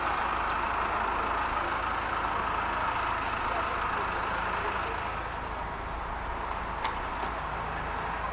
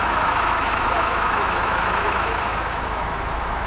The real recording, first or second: first